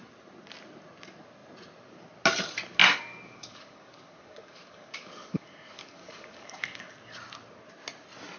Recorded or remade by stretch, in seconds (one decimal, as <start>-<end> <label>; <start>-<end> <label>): 0.0-2.8 recorded; 2.8-7.2 remade; 7.2-8.4 recorded

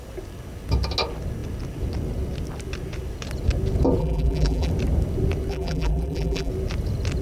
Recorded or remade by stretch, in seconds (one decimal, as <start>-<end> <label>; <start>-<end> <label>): 0.0-4.0 recorded; 4.0-4.7 remade; 4.7-5.5 recorded; 5.5-6.5 remade; 6.5-7.2 recorded

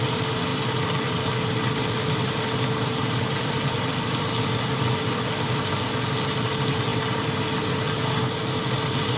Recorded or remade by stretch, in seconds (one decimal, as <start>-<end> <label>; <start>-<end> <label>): 0.0-6.9 recorded; 6.9-7.4 remade; 7.4-9.2 recorded

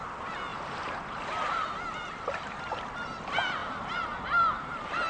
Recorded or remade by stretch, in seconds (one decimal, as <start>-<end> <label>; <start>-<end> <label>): 0.0-0.5 recorded; 0.5-2.6 remade; 2.6-3.6 recorded; 3.6-5.1 remade

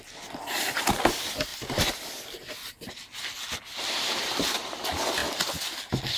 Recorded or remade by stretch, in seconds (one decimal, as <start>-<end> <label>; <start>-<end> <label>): 0.0-6.2 recorded

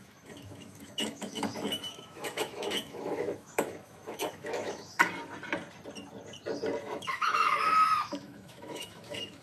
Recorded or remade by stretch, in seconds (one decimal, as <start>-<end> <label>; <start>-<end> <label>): 0.0-5.0 remade; 5.0-6.8 recorded; 6.8-9.4 remade

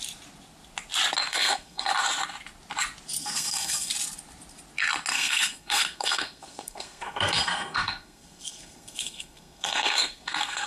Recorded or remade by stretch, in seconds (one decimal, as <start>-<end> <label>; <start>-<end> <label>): 0.0-1.3 recorded; 1.3-1.9 remade; 1.9-3.2 recorded; 3.2-3.9 remade; 3.9-5.1 recorded; 5.1-10.7 remade

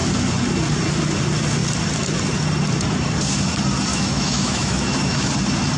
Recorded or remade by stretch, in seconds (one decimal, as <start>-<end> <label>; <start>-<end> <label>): 0.0-3.9 recorded; 3.9-5.3 remade; 5.3-5.8 recorded